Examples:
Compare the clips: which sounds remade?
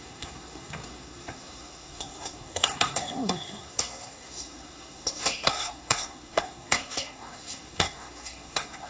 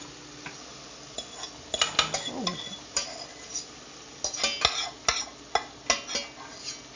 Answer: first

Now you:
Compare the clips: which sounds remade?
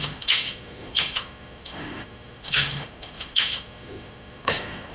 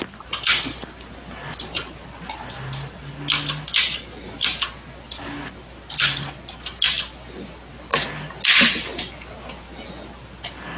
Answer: first